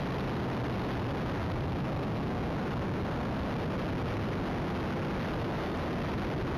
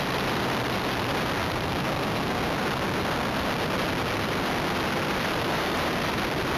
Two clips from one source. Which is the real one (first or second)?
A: first